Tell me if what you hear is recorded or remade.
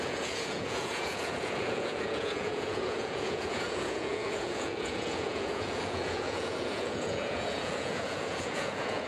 remade